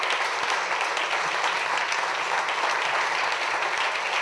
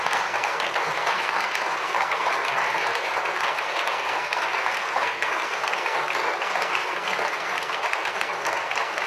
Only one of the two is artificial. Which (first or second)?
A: second